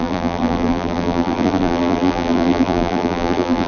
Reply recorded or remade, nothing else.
remade